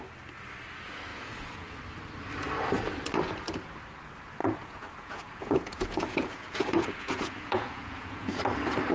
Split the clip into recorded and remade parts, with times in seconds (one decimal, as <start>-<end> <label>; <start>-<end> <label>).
0.0-1.1 recorded; 1.1-1.8 remade; 1.8-4.4 recorded; 4.4-8.4 remade; 8.4-8.9 recorded